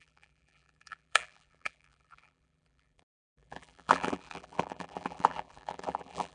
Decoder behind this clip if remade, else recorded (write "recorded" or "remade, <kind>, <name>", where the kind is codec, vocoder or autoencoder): remade, vocoder, BigVGAN v2